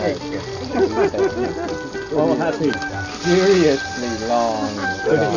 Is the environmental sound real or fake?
real